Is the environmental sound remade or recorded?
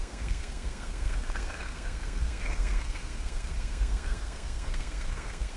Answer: remade